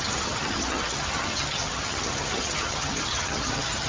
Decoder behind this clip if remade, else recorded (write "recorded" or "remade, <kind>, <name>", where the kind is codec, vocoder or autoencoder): remade, vocoder, HiFi-GAN